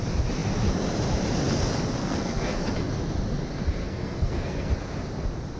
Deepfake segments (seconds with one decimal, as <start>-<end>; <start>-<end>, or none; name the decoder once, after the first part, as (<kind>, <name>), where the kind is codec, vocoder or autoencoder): 2.0-2.9 (codec, SNAC); 3.8-4.7